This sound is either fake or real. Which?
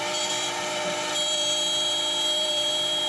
fake